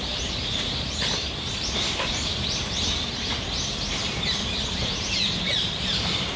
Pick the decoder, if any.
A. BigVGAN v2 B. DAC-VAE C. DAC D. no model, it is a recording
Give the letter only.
A